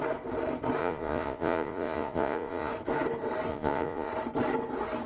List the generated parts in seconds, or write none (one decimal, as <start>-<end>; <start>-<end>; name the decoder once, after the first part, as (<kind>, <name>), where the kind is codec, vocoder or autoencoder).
0.8-2.7 (vocoder, Vocos); 3.5-4.1